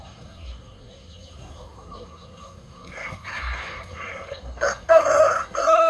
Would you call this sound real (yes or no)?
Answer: no